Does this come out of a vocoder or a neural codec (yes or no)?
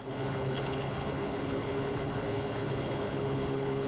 yes